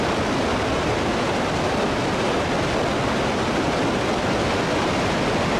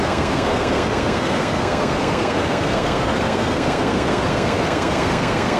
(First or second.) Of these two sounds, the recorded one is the first